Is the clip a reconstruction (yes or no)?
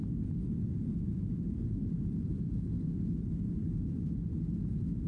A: no